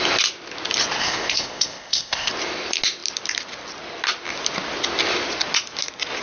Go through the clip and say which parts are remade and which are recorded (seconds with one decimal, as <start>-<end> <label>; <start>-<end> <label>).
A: 0.0-1.0 recorded; 1.0-2.3 remade; 2.3-6.2 recorded